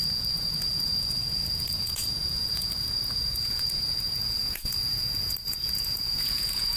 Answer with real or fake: fake